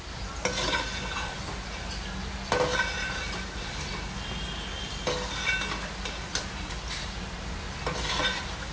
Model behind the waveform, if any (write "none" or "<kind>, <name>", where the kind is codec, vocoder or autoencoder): none